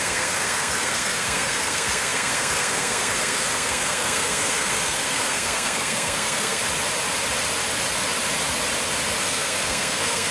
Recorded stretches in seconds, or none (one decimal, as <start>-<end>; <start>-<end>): 6.6-9.2